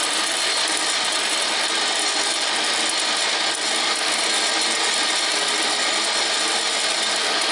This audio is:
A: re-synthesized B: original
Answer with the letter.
B